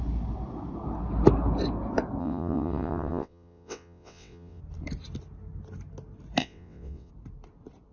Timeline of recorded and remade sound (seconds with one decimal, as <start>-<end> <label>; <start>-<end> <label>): 0.0-2.2 recorded; 2.2-4.6 remade; 4.6-6.4 recorded; 6.4-7.1 remade; 7.1-7.9 recorded